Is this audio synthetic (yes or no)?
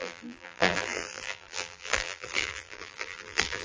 yes